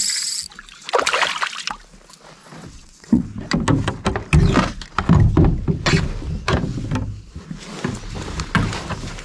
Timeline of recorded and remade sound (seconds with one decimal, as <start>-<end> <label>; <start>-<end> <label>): 0.0-2.4 recorded; 2.4-3.2 remade; 3.2-9.2 recorded